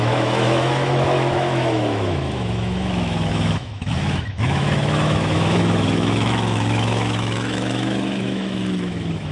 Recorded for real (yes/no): no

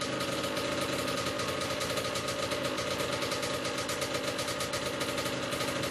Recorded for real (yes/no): yes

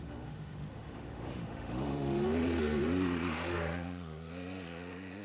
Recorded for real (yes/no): no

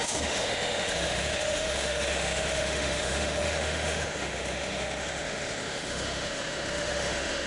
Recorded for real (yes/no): no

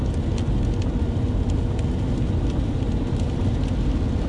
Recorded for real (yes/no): yes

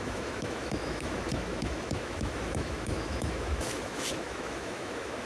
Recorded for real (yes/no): no